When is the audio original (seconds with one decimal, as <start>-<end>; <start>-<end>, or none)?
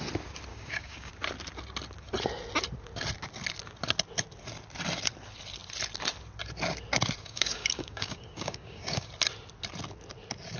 0.0-0.5; 1.1-7.2; 9.1-10.6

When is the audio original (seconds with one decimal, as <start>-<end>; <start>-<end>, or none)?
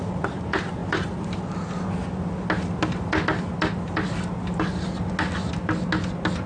0.0-6.5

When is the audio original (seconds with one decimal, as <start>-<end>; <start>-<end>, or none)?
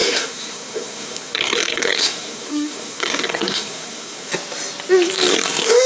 4.3-5.3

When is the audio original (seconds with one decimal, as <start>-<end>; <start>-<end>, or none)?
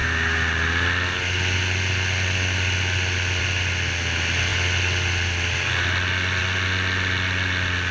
0.0-7.9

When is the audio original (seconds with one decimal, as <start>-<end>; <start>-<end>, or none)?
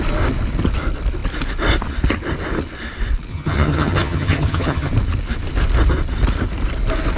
0.0-3.3; 4.9-7.2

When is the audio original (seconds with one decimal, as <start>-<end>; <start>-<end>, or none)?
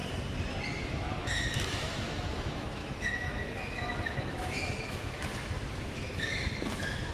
0.0-0.8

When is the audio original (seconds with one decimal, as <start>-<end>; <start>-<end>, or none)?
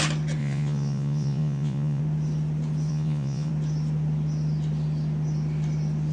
0.0-0.4; 2.0-2.9; 3.5-6.1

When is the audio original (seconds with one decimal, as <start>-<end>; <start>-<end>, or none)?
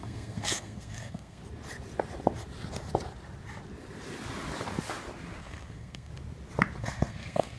1.4-5.4; 6.1-6.8